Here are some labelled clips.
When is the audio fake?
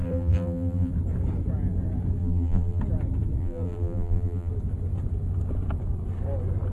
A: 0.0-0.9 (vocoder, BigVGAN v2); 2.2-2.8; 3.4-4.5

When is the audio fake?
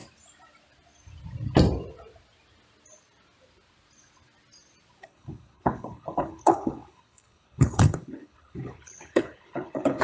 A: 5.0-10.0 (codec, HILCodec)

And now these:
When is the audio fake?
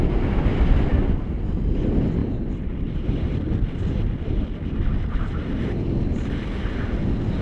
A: 2.2-6.6 (vocoder, BigVGAN v2)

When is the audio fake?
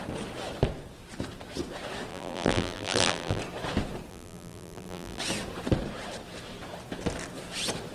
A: 2.1-3.4 (vocoder, BigVGAN v2); 4.1-5.2